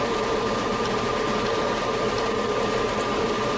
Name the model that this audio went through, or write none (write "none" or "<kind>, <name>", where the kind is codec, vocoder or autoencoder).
none